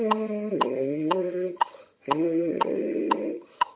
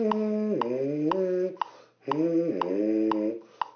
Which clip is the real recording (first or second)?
second